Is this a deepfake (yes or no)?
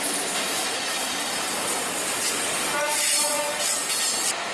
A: no